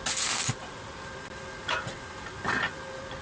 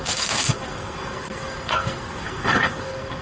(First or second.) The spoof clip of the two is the second